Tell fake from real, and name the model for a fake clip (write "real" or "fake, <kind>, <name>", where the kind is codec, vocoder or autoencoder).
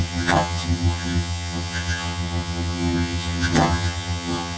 fake, vocoder, HiFi-GAN